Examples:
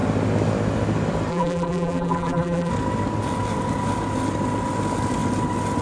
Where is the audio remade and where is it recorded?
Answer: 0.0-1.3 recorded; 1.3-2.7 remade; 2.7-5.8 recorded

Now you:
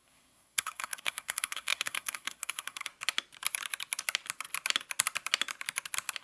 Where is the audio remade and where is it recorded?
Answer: 0.0-2.9 remade; 2.9-6.2 recorded

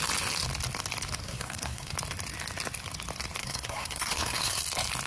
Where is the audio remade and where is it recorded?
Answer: 0.0-1.2 recorded; 1.2-1.9 remade; 1.9-3.4 recorded; 3.4-4.6 remade; 4.6-5.1 recorded

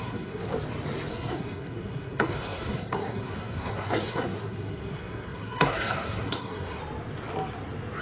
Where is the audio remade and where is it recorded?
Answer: 0.0-0.5 remade; 0.5-1.1 recorded; 1.1-6.8 remade; 6.8-8.0 recorded

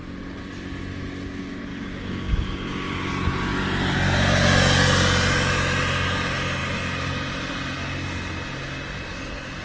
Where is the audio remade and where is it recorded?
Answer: 0.0-1.7 recorded; 1.7-3.1 remade; 3.1-9.6 recorded